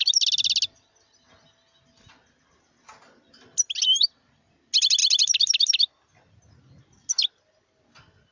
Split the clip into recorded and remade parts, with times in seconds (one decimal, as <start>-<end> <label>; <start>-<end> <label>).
0.0-8.3 recorded